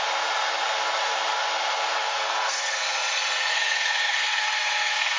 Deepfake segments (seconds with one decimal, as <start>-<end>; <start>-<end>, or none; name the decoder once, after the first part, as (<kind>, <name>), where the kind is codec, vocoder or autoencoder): 2.1-2.8 (codec, SNAC); 3.5-5.2